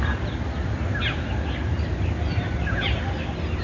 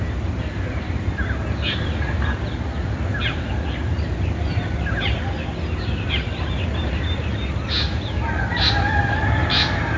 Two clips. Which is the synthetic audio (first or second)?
second